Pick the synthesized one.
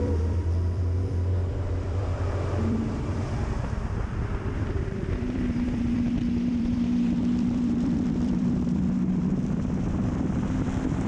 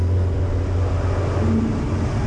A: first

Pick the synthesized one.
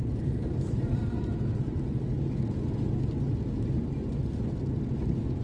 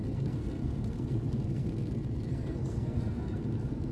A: second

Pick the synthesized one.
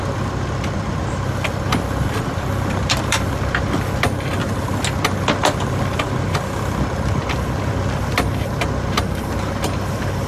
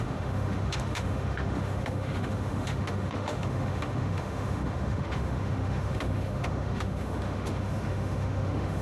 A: second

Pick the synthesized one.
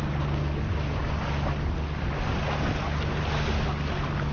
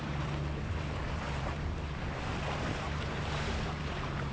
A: second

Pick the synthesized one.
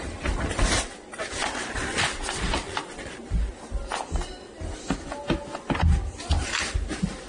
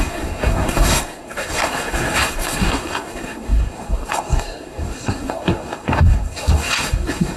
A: second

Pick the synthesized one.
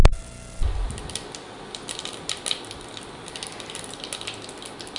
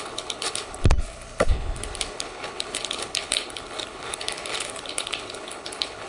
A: second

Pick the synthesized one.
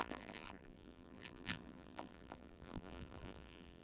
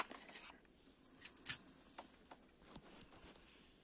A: first